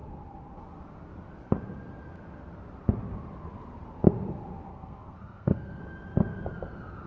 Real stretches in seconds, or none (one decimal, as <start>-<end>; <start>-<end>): 0.0-4.7; 5.8-7.1